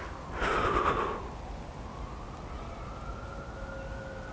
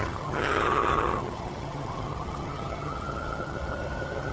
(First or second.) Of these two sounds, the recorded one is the first